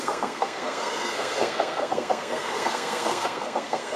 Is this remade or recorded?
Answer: remade